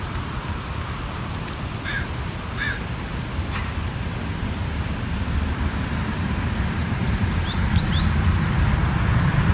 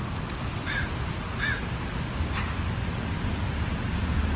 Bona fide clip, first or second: second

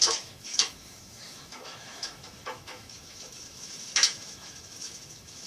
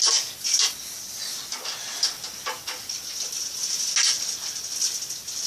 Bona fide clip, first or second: second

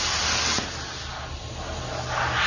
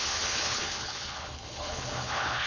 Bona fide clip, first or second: first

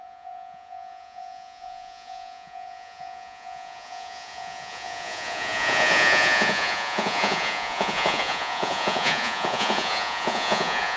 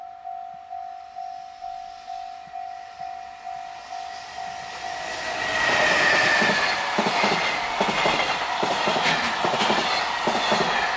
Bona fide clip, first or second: second